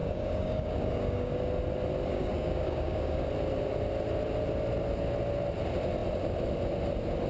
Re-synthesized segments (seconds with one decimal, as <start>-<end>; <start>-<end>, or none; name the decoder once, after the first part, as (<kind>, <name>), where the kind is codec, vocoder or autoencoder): 0.0-1.3 (codec, DAC); 2.1-3.3